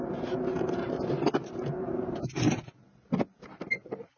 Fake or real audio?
real